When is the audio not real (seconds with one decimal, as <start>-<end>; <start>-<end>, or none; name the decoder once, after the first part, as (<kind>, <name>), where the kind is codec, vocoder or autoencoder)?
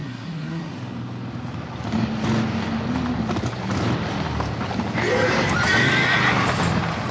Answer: 0.0-0.7 (codec, SNAC)